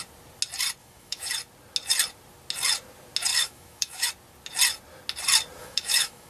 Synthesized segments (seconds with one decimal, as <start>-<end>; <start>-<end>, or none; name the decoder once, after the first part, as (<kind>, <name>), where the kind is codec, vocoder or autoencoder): 0.8-1.3 (autoencoder, DAC-VAE); 3.3-4.1; 5.6-6.3